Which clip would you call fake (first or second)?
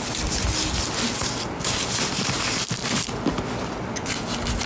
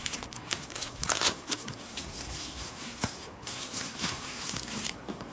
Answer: second